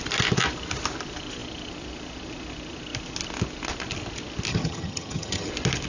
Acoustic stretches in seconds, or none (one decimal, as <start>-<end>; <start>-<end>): 0.0-4.5; 5.5-5.9

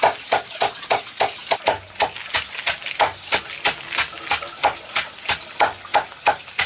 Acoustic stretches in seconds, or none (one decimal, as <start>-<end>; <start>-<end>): 0.0-6.7